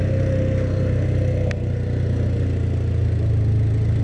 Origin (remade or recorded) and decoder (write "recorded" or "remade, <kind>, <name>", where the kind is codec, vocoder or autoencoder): recorded